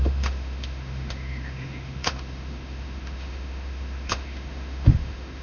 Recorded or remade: remade